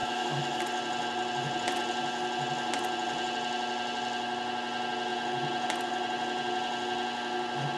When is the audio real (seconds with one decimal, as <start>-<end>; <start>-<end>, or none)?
0.6-7.8